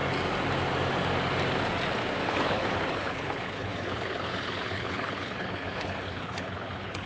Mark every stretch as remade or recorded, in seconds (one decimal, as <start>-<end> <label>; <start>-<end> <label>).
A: 0.0-2.3 recorded; 2.3-7.1 remade